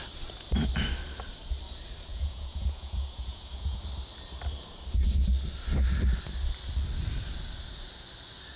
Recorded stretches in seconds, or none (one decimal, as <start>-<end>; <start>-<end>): 0.0-2.1; 3.8-8.6